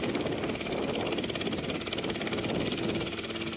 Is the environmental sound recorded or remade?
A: recorded